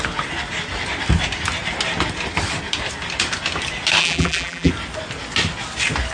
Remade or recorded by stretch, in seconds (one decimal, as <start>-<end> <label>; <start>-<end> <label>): 0.0-4.0 recorded; 4.0-4.7 remade; 4.7-6.1 recorded